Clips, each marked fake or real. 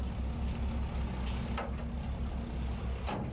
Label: real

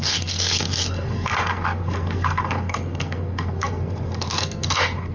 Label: fake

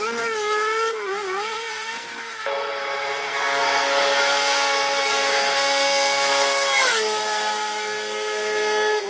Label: fake